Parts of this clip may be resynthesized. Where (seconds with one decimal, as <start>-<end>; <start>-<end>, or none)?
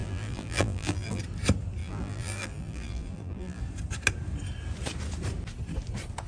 0.0-1.2; 1.8-3.6